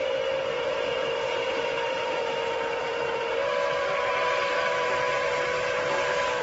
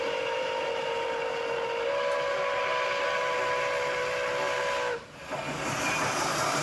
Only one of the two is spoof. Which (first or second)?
first